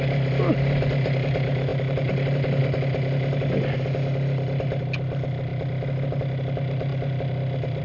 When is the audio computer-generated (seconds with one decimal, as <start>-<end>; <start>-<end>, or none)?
none